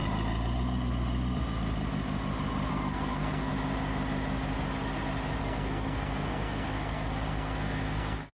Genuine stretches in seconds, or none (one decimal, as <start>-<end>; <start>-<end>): 0.0-2.7; 3.5-5.4